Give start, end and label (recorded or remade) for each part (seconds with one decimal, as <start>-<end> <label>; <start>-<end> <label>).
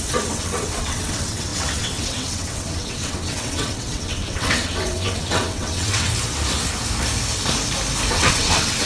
0.0-6.1 remade; 6.1-8.1 recorded; 8.1-8.9 remade